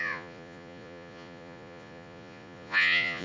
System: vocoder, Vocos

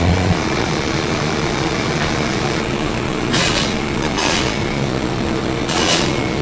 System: vocoder, Vocos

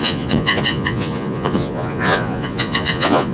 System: vocoder, Vocos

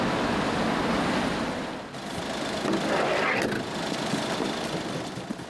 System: none